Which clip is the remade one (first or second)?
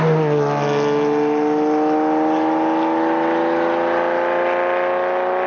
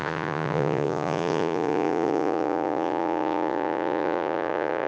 second